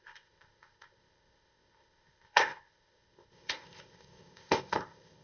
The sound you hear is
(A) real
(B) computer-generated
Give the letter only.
B